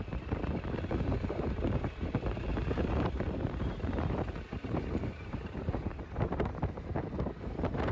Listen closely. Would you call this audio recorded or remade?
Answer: remade